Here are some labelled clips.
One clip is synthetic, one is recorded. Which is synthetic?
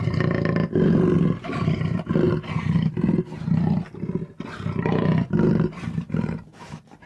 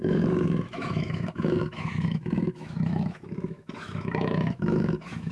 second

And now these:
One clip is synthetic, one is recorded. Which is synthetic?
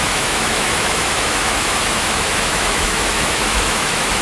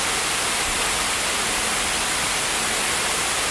first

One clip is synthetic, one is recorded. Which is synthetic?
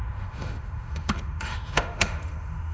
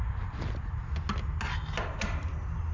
first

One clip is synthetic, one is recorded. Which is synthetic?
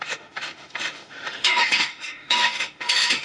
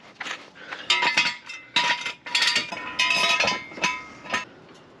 first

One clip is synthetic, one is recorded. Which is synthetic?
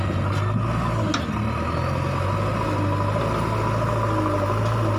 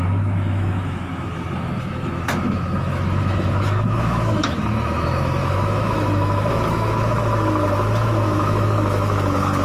second